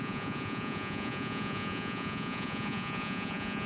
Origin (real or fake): fake